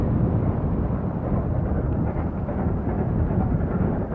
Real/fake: real